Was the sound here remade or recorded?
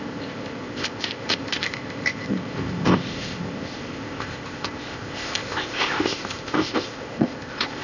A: remade